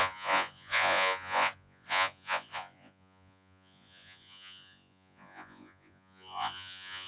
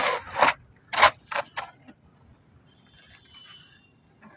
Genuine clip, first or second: second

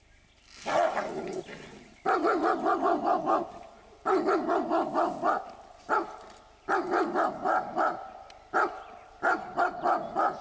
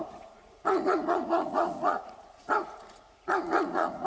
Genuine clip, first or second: first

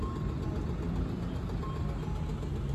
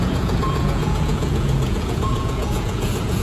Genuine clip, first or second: first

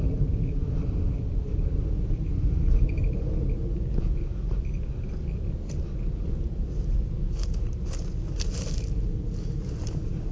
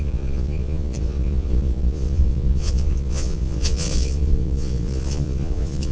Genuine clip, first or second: first